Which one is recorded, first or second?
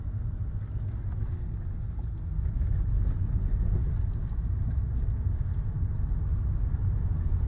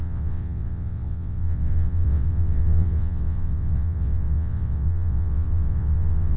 first